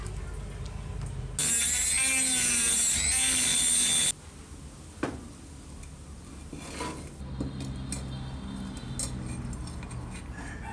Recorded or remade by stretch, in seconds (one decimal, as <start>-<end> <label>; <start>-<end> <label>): 0.0-10.7 recorded